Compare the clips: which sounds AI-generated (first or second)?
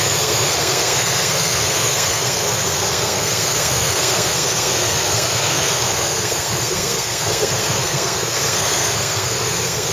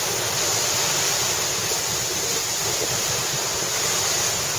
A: first